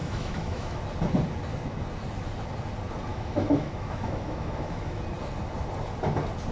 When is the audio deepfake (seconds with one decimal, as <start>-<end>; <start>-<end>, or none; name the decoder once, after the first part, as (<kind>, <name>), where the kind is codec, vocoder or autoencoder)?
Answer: 0.0-0.8 (autoencoder, DAC-VAE); 3.1-5.0